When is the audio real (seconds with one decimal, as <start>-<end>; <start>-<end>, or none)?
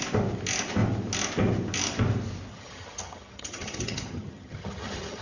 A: 0.0-2.5